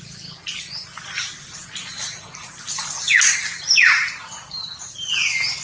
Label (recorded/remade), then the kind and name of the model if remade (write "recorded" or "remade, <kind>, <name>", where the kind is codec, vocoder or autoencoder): recorded